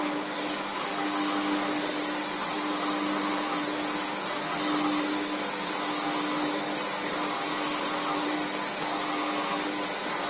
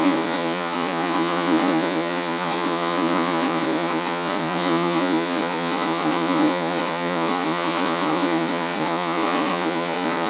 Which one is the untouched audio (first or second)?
first